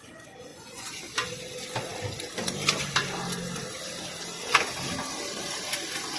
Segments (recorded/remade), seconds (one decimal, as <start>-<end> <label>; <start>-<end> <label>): 0.0-0.5 recorded; 0.5-1.0 remade; 1.0-6.2 recorded